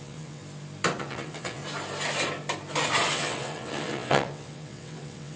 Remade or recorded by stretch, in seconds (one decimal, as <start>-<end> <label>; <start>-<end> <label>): 0.0-0.4 remade; 0.4-1.0 recorded; 1.0-1.6 remade; 1.6-3.1 recorded; 3.1-5.4 remade